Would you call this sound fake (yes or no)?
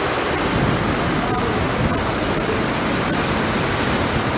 no